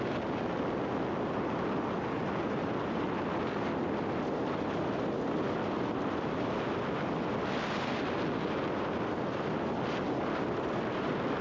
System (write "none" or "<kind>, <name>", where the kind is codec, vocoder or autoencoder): none